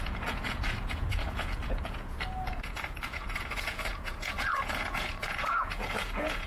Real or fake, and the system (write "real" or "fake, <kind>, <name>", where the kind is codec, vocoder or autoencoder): fake, vocoder, Vocos